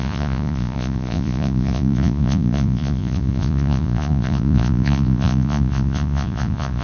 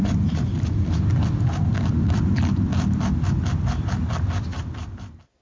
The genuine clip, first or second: second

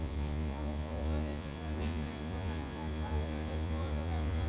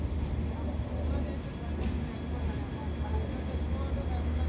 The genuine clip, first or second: second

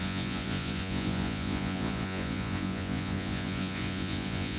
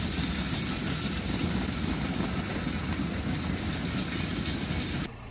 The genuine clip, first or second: second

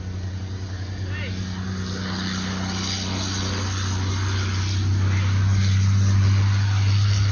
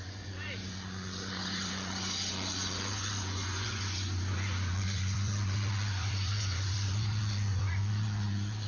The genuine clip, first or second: first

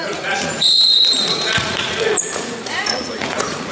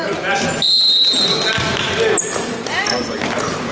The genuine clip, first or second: second